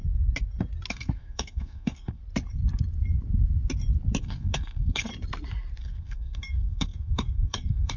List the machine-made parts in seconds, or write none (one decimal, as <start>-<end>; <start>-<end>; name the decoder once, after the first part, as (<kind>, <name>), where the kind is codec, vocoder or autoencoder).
0.9-2.2 (codec, SNAC); 4.2-5.1; 5.8-8.0

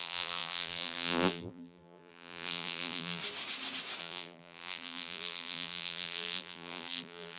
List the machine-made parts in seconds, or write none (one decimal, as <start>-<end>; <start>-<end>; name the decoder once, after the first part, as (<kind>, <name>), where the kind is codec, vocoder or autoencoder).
0.0-3.2 (vocoder, BigVGAN v2); 4.0-7.4

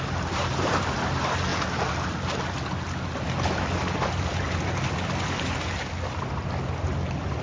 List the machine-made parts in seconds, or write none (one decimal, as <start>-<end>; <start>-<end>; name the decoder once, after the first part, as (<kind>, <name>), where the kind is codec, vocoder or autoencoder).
none

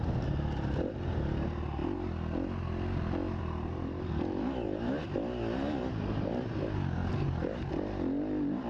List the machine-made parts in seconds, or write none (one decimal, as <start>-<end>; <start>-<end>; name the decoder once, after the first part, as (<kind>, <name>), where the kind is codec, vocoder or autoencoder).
none

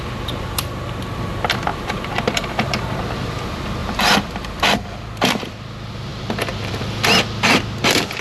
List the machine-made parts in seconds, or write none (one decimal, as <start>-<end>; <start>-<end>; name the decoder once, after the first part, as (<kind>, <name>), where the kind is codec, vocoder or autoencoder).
1.7-3.0 (vocoder, BigVGAN v2); 3.8-5.4; 6.1-6.8

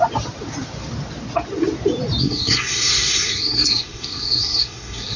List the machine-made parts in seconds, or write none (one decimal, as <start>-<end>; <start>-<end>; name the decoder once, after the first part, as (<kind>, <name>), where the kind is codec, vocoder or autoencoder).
2.2-5.2 (codec, SNAC)

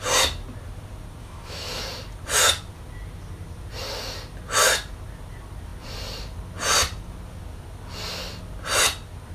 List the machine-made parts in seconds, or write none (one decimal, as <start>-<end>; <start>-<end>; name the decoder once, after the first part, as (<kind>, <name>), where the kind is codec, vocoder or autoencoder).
1.2-1.8 (autoencoder, DAC-VAE)

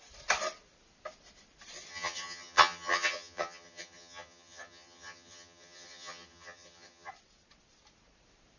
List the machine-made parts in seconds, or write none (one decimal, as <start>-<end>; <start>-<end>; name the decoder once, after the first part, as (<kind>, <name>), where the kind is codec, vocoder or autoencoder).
1.9-7.1 (vocoder, HiFi-GAN)